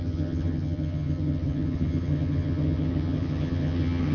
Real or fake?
fake